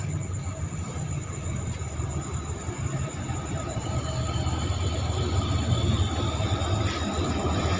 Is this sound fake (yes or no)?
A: no